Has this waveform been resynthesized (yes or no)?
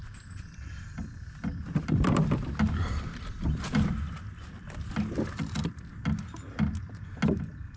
no